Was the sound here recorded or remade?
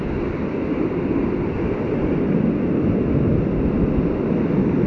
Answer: recorded